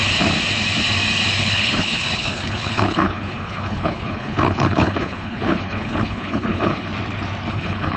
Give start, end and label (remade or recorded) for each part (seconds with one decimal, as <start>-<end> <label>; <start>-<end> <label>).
0.0-1.4 recorded; 1.4-6.9 remade; 6.9-7.5 recorded; 7.5-8.0 remade